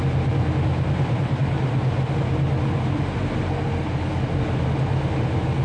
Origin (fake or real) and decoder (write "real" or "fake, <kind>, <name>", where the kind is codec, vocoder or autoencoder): real